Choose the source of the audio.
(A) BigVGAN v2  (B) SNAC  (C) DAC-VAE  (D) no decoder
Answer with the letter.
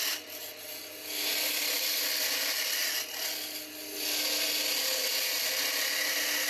D